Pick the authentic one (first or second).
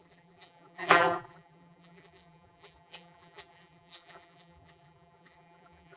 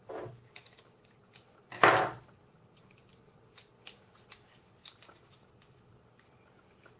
second